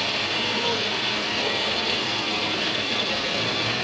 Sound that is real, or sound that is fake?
fake